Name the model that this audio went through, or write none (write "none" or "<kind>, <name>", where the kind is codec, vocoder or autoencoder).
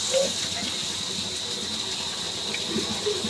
none